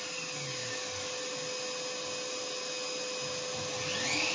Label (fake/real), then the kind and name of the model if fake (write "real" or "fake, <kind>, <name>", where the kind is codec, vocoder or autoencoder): real